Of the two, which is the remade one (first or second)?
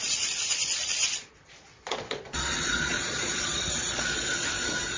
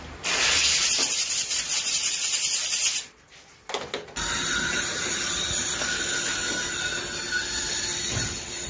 first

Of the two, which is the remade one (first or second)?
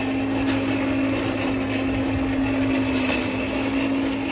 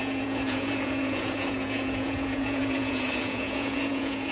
second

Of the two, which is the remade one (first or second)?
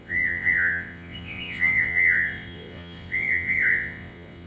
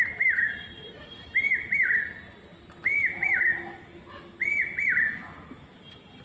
first